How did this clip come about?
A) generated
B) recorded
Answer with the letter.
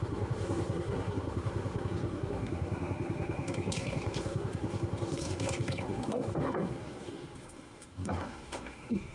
A